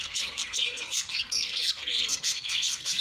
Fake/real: fake